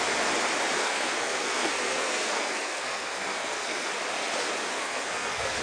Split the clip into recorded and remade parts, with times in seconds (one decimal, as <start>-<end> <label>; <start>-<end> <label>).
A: 0.0-0.8 recorded; 0.8-3.9 remade; 3.9-4.7 recorded; 4.7-5.6 remade